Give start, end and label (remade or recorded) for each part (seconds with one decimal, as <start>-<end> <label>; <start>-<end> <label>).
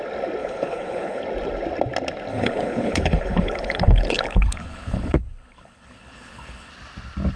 0.0-0.4 recorded; 0.4-1.2 remade; 1.2-2.3 recorded; 2.3-6.7 remade; 6.7-7.4 recorded